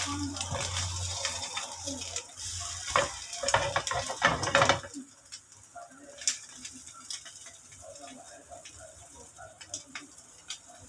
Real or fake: real